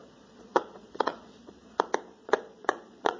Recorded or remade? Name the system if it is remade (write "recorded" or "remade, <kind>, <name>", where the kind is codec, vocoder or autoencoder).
remade, vocoder, Vocos